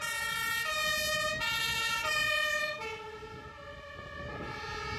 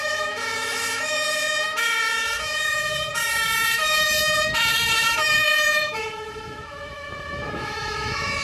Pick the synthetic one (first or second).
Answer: second